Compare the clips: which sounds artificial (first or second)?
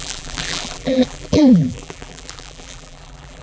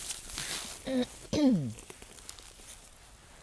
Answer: first